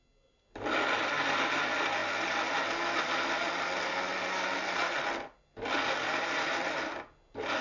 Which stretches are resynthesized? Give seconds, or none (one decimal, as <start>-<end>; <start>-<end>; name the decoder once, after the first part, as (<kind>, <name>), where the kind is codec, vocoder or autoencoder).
none